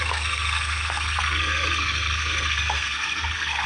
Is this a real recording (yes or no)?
no